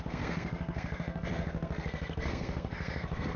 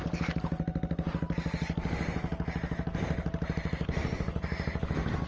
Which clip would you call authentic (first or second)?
second